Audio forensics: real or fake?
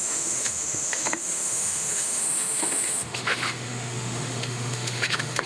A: fake